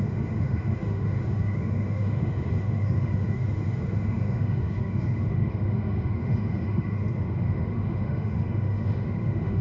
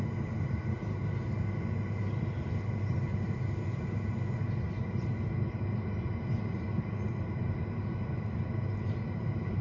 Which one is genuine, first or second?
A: second